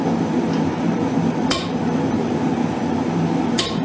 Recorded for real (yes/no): no